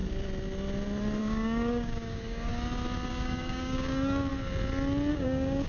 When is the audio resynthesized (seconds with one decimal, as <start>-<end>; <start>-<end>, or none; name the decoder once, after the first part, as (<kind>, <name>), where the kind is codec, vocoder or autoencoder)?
1.2-2.5 (codec, DAC); 3.1-4.3; 5.1-5.7